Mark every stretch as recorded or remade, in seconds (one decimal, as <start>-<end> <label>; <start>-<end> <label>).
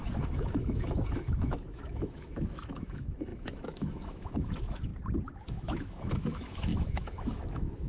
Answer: 0.0-4.9 remade; 4.9-5.5 recorded; 5.5-7.9 remade